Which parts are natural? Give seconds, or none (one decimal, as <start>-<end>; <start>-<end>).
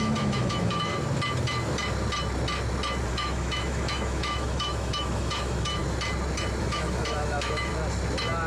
0.9-3.1; 5.8-6.6; 7.7-8.5